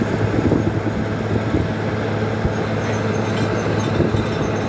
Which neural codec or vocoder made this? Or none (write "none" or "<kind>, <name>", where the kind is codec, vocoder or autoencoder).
none